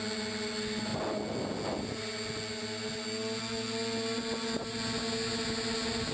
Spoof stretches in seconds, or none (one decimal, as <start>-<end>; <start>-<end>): none